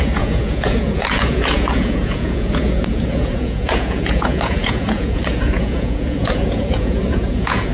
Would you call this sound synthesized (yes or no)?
yes